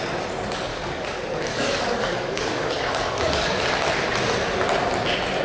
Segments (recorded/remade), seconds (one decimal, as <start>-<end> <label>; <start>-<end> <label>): 0.0-0.7 recorded; 0.7-3.9 remade; 3.9-5.4 recorded